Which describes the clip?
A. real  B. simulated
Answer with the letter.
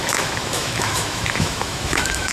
B